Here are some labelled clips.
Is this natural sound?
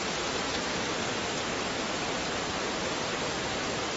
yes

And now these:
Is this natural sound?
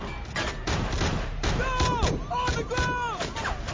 yes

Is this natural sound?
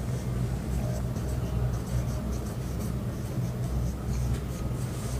yes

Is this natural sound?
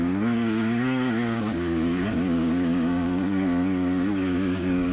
no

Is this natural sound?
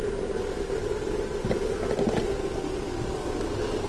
yes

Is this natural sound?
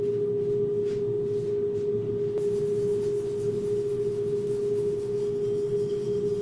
yes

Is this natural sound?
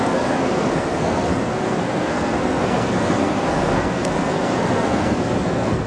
no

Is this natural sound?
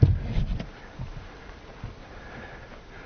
yes